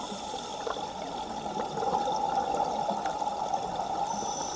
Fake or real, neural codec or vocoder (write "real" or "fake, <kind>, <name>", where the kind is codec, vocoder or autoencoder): real